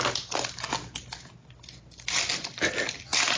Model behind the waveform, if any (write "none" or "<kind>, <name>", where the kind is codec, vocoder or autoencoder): none